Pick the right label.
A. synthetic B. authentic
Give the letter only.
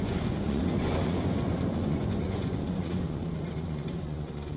A